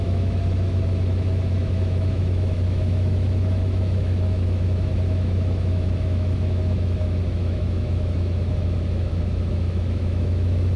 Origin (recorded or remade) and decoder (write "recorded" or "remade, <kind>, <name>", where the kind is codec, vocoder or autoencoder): remade, autoencoder, DAC-VAE